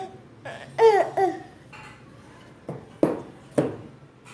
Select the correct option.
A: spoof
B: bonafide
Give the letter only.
B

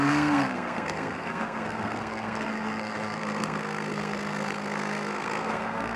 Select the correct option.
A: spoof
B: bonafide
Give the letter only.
A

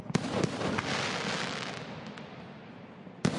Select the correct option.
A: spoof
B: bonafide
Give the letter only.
B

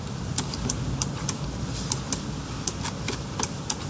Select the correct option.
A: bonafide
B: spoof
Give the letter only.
A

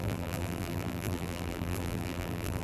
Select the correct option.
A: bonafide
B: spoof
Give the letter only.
B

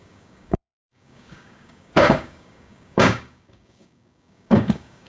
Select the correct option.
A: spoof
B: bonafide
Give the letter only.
A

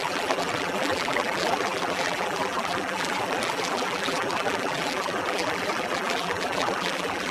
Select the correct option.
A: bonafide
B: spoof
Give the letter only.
B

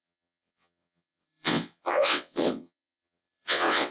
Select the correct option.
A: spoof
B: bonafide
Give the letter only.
A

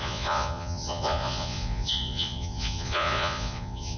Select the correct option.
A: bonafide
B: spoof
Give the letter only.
B